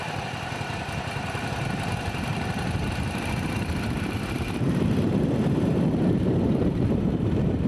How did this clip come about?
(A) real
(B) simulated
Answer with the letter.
B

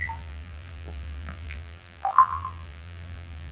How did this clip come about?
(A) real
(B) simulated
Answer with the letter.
B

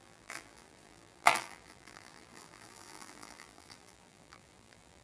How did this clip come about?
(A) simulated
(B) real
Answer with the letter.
A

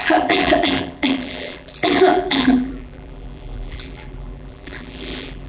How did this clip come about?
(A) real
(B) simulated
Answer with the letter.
B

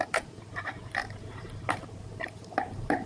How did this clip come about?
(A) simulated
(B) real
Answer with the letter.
A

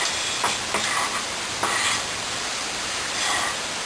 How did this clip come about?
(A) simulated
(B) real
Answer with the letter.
A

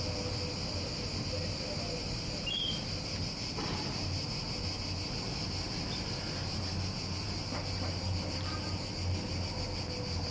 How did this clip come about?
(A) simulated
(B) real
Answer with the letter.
B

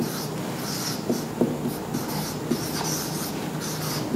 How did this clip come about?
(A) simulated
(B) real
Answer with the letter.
B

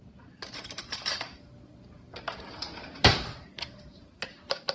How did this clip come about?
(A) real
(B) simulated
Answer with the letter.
B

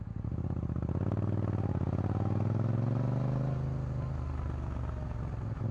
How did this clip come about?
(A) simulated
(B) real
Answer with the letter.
B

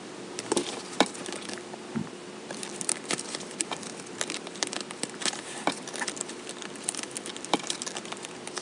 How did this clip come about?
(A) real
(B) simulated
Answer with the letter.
B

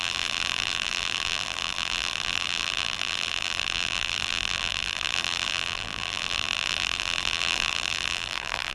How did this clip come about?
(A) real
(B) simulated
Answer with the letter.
B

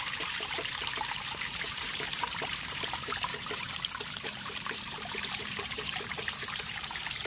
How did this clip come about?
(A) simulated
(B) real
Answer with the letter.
A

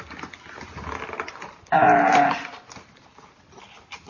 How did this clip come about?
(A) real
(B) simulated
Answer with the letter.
A